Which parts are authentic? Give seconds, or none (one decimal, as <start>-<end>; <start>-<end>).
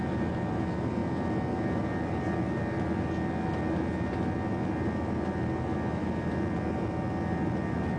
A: 0.0-8.0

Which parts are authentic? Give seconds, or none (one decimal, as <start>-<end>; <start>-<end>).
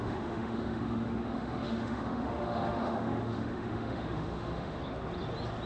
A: 4.8-5.7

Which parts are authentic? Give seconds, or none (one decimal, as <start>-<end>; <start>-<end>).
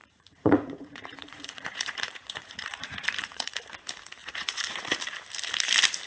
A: 3.7-4.2; 4.8-6.1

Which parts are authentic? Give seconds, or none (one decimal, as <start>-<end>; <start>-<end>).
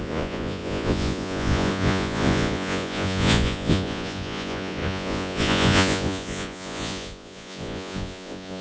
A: none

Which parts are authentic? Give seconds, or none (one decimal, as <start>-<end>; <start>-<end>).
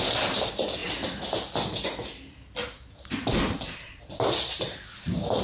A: 0.0-5.4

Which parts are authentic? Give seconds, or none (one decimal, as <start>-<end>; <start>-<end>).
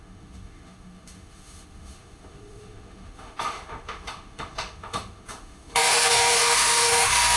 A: none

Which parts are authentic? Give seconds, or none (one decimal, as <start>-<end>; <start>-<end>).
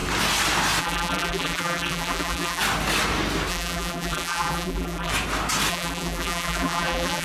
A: 0.0-0.8; 2.6-3.5; 5.1-5.7